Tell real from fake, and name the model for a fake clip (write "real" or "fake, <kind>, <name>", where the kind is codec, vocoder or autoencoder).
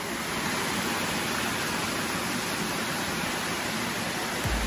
real